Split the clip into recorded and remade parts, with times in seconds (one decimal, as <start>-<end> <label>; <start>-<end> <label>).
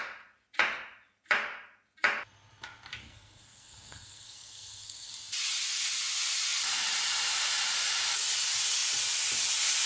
0.0-3.0 recorded; 3.0-5.1 remade; 5.1-9.9 recorded